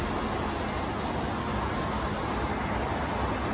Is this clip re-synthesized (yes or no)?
no